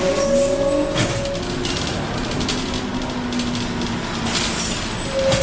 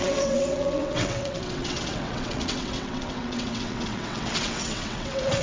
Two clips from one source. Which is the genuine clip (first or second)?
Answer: first